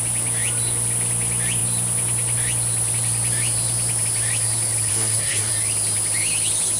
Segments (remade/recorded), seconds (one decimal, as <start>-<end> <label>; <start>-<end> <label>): 0.0-4.9 recorded; 4.9-5.5 remade; 5.5-6.8 recorded